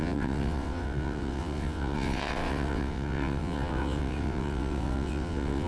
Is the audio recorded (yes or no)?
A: no